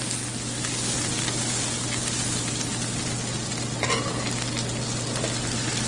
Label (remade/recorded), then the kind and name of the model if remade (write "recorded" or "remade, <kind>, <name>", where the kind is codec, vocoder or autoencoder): recorded